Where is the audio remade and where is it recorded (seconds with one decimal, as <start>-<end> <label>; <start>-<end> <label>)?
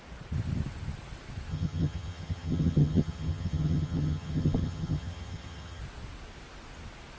0.0-1.5 recorded; 1.5-5.8 remade; 5.8-7.2 recorded